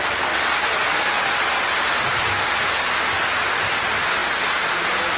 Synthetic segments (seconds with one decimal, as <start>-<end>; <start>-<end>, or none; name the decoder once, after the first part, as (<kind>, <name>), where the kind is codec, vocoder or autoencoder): none